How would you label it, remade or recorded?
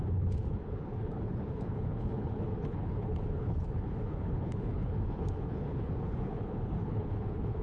remade